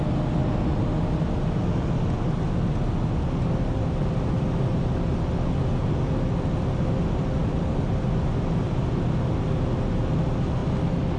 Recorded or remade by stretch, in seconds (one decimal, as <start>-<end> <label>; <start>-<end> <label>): 0.0-7.4 recorded; 7.4-8.2 remade; 8.2-11.2 recorded